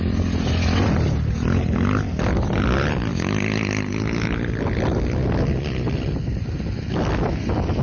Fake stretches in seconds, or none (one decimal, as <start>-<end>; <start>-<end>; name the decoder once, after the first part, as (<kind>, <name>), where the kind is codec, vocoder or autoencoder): none